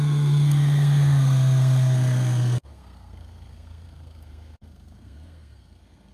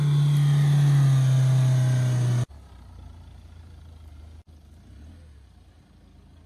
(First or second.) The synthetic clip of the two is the first